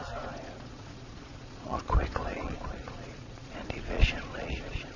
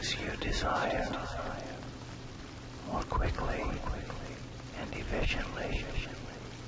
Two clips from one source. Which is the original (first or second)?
second